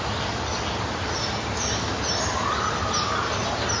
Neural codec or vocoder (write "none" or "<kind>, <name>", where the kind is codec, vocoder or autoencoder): none